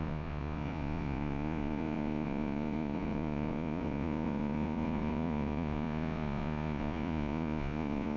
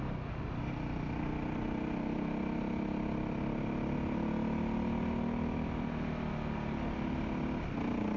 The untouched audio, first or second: second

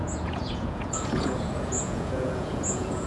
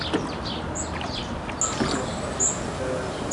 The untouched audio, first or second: second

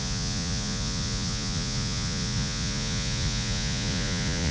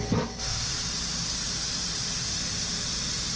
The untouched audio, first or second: second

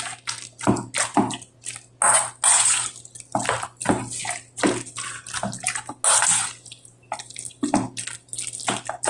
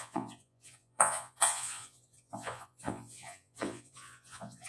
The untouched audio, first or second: first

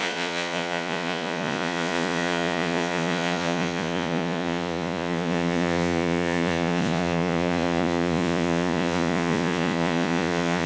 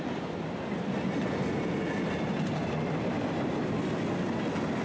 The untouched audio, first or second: second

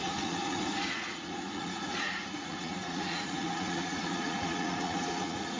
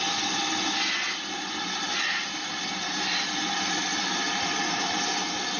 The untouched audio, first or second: second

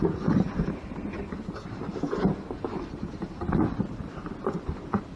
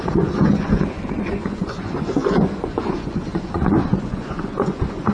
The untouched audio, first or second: first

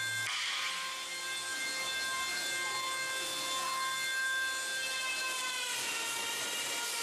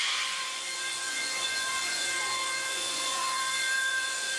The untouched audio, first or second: first